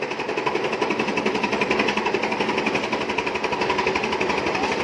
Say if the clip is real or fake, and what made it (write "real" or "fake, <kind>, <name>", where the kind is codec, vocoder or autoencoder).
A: real